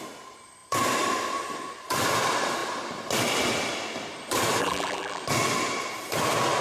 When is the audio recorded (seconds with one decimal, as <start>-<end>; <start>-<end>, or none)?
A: 0.0-4.6; 5.2-6.6